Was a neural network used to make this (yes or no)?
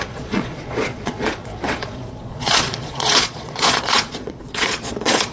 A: yes